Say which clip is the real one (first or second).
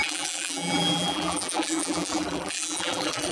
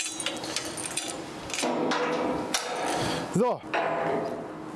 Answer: second